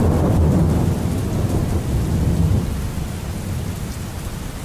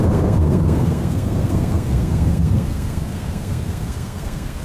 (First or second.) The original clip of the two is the first